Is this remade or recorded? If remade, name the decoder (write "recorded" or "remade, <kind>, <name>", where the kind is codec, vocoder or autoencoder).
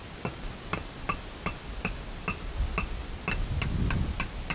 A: recorded